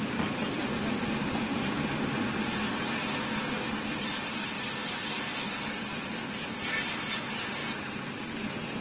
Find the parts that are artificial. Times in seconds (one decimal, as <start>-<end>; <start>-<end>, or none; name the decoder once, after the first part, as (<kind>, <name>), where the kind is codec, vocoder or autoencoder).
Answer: none